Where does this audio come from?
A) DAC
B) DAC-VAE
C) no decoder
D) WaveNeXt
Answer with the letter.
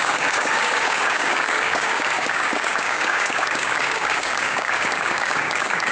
A